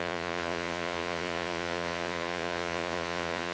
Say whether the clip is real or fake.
fake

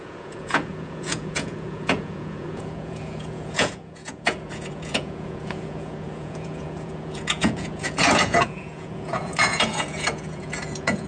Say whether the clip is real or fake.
fake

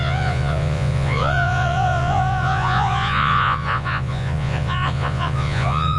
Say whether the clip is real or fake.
fake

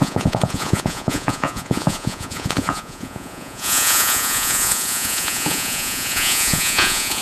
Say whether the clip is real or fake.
fake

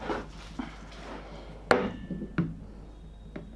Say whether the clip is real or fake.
real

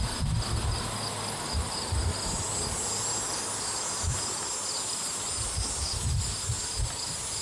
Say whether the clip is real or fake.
real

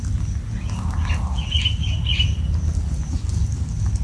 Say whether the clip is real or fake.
real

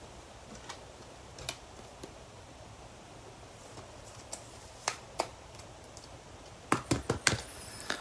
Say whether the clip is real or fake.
real